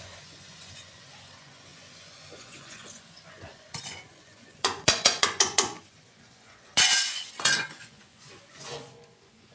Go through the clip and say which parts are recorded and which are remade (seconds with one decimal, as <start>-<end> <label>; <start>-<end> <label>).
0.0-9.5 remade